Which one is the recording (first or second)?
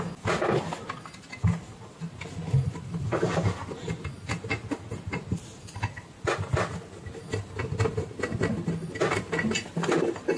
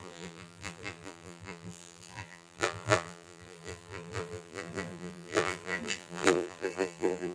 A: first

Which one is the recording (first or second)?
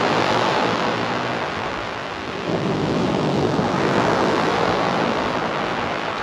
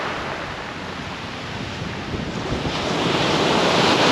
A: second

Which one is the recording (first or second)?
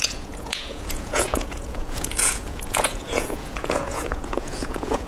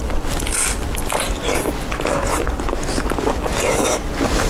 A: second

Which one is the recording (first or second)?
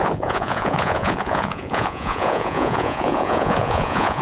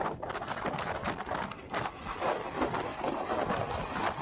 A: second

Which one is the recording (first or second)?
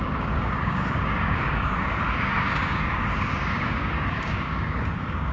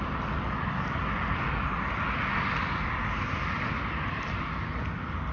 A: second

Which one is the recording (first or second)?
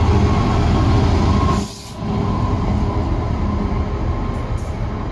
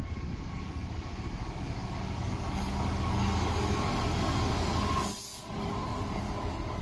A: first